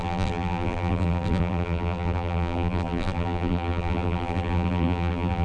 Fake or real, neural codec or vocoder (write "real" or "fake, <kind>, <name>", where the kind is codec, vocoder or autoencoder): fake, vocoder, BigVGAN v2